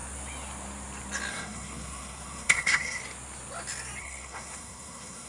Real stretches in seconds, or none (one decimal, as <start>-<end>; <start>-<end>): 0.0-1.3; 3.0-4.0